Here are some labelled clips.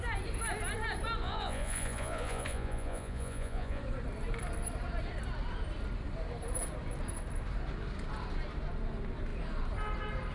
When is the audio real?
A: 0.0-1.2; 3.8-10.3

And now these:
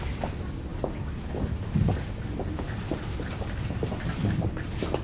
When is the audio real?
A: 0.0-5.0

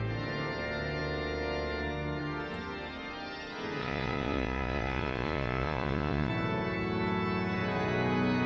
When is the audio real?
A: 0.0-3.8; 6.3-8.5

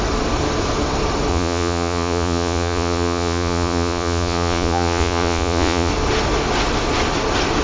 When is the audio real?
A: 0.0-1.3; 5.9-7.6

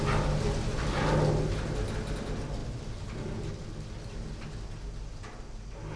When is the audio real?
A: 0.0-6.0